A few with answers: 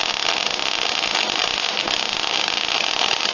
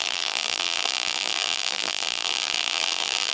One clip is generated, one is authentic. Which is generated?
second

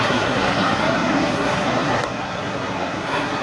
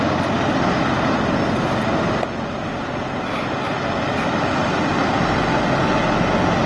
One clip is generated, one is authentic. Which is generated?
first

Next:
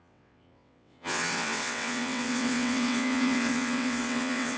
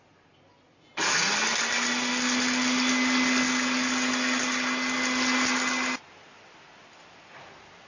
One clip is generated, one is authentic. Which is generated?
first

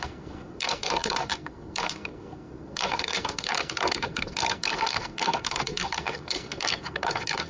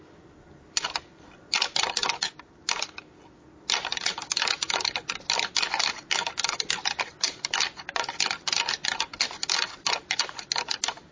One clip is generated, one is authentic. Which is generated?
first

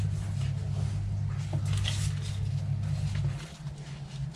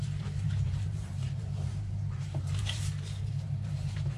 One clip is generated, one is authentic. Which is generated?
second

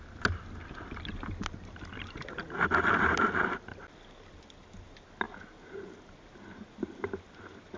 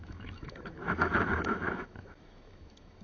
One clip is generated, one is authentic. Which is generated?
second